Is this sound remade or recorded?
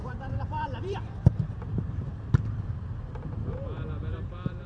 remade